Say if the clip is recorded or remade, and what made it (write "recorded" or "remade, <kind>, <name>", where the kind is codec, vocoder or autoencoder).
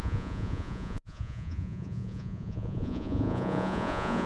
remade, vocoder, Vocos